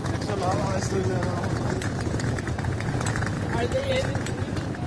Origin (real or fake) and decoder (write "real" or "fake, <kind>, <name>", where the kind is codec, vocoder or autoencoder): fake, vocoder, Vocos